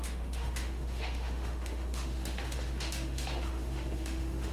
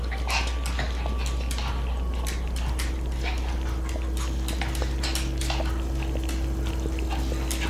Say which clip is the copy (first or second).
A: first